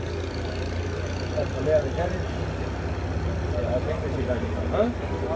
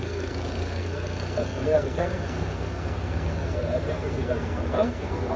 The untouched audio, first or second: first